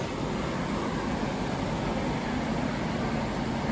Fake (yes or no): yes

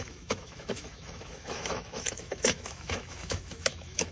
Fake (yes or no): yes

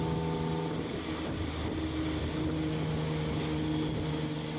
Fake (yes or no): no